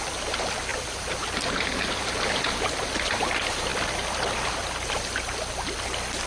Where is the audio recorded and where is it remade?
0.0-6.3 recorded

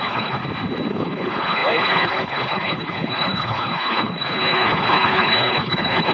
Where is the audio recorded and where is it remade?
0.0-0.4 remade; 0.4-0.9 recorded; 0.9-6.1 remade

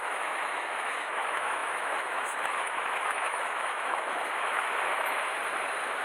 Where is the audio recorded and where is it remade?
0.0-5.3 remade; 5.3-6.0 recorded